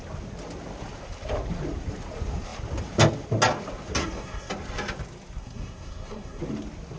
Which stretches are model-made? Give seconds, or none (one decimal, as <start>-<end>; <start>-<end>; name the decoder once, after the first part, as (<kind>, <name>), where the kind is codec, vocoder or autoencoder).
4.0-4.5 (codec, SNAC); 5.4-6.4